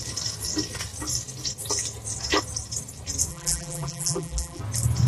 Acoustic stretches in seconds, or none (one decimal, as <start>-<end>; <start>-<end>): 0.0-3.3; 4.6-5.1